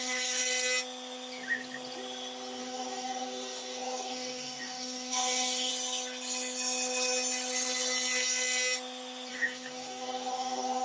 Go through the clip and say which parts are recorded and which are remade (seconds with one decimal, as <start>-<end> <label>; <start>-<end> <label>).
0.0-0.4 remade; 0.4-2.6 recorded; 2.6-5.7 remade; 5.7-9.3 recorded; 9.3-10.8 remade